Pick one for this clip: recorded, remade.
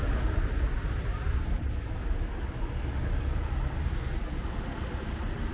recorded